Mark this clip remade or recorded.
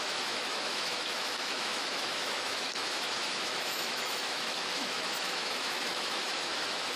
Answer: remade